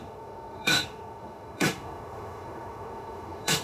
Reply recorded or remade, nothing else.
remade